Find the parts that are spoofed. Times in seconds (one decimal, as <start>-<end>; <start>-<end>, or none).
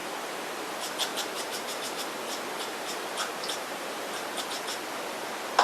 1.1-4.4